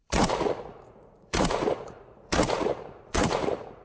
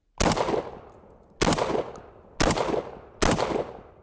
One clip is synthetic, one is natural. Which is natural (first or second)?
second